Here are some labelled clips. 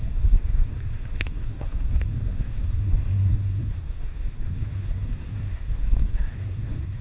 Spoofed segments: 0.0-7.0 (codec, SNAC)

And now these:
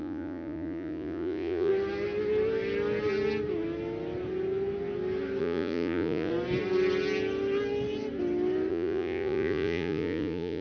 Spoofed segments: 0.0-1.7 (vocoder, Vocos); 5.4-6.3; 8.7-10.6

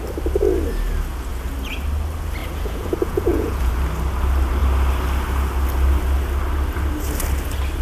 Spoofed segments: 2.4-3.7 (vocoder, Vocos)

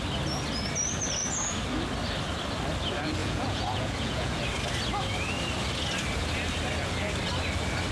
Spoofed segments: 3.2-4.4 (vocoder, Vocos)

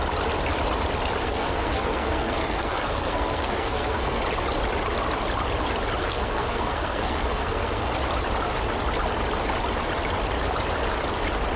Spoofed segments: 1.2-4.2 (codec, SNAC); 6.0-7.9

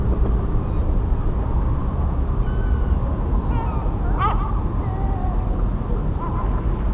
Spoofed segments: none

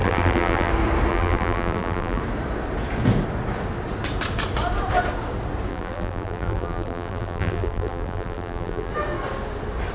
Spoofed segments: 0.0-0.7 (vocoder, BigVGAN v2); 1.1-2.2; 5.7-8.9

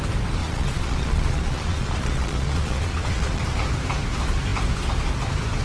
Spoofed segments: 0.4-3.4 (vocoder, Vocos)